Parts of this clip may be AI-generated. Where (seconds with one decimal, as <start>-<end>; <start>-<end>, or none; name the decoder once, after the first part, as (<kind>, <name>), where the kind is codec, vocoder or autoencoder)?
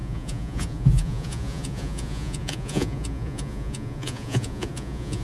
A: 0.0-5.2 (vocoder, Vocos)